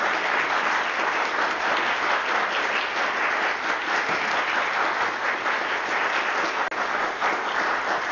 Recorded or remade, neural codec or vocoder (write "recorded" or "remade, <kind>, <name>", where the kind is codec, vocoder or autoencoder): recorded